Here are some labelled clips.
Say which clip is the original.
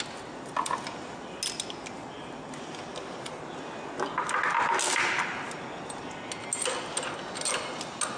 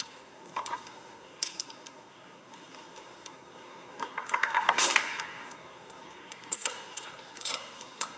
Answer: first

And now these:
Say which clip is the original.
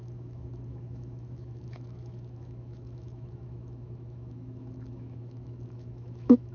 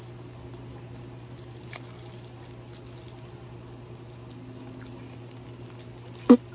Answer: second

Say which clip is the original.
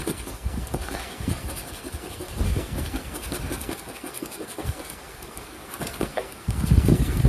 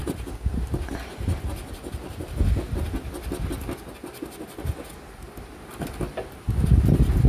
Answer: second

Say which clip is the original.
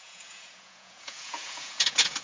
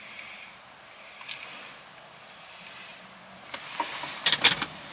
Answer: second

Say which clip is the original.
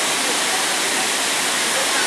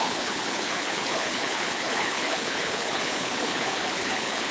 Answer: first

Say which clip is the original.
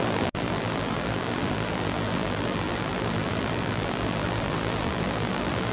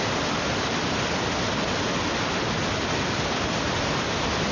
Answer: second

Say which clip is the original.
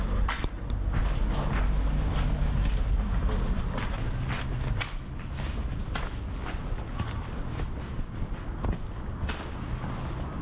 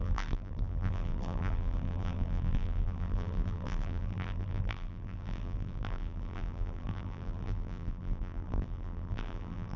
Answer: first